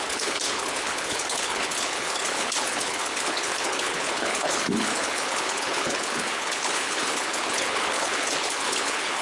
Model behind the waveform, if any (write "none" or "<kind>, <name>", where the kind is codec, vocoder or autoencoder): codec, HILCodec